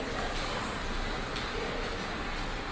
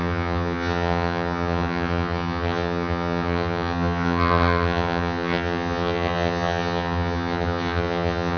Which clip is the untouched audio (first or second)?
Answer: first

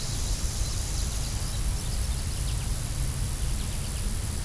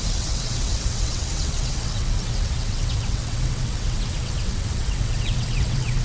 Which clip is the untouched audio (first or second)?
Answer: first